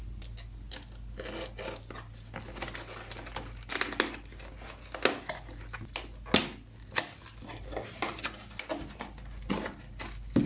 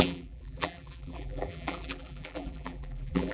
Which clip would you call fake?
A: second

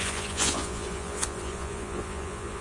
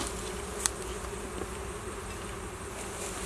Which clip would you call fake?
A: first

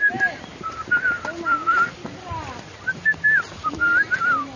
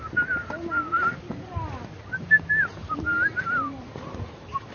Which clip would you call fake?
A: first